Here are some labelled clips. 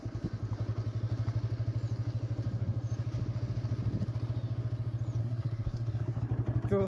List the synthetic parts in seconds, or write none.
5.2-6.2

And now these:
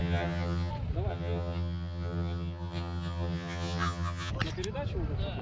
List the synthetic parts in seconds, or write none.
0.0-0.7; 1.1-4.3

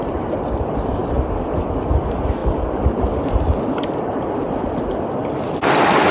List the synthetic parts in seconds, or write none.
none